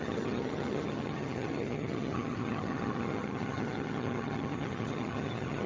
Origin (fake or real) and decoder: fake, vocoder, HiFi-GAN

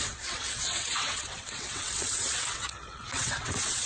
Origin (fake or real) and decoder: fake, vocoder, WaveNeXt